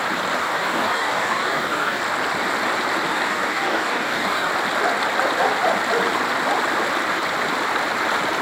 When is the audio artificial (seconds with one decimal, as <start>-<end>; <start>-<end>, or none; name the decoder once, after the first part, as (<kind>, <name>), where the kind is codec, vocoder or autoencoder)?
0.4-2.0 (codec, DAC); 3.1-4.5